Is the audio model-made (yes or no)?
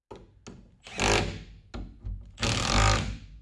no